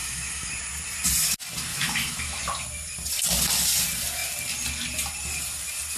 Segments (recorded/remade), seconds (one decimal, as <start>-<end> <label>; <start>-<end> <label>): 0.0-0.5 remade; 0.5-1.7 recorded; 1.7-2.4 remade; 2.4-6.0 recorded